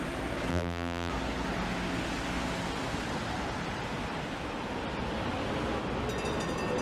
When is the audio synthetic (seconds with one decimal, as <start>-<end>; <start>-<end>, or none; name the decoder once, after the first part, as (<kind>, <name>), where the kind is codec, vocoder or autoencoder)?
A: 0.5-1.1 (vocoder, BigVGAN v2)